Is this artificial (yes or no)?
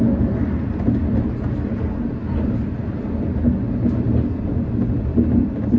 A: no